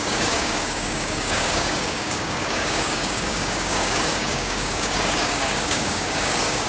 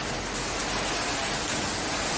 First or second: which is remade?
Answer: first